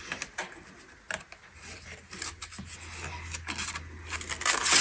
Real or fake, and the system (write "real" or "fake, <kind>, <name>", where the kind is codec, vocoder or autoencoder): real